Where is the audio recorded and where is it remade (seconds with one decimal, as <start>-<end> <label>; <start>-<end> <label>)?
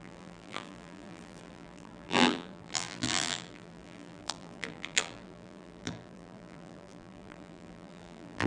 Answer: 0.0-8.5 remade